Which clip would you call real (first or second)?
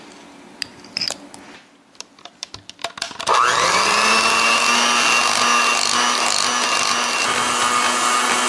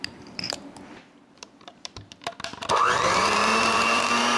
first